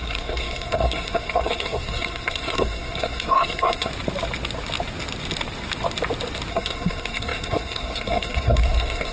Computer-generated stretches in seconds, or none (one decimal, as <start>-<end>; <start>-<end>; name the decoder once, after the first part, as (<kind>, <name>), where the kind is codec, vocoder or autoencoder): 0.0-3.9 (codec, SNAC); 6.5-9.1